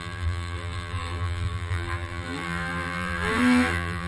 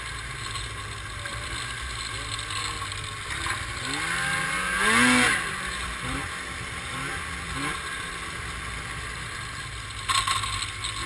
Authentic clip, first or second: second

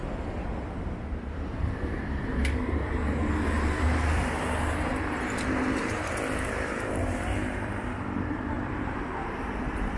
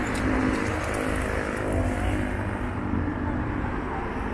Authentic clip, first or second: second